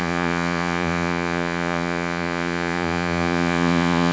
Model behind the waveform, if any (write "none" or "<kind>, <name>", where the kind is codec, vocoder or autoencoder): vocoder, Vocos